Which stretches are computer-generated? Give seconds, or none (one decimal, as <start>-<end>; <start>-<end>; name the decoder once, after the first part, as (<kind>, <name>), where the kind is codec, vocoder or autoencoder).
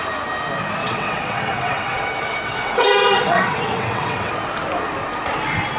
0.8-4.3 (vocoder, WaveNeXt)